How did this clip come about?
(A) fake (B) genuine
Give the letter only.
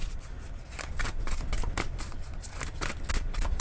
B